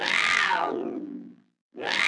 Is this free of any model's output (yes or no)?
no